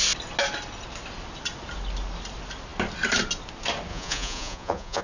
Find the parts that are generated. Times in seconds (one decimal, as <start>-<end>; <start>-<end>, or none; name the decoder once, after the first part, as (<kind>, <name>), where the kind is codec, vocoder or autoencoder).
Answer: 3.9-5.0 (vocoder, Vocos)